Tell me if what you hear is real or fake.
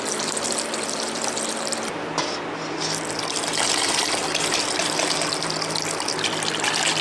real